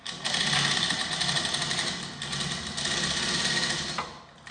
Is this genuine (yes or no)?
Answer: yes